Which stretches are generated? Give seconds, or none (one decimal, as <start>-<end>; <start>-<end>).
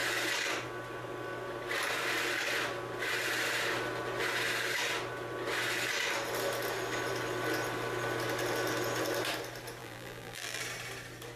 9.8-10.6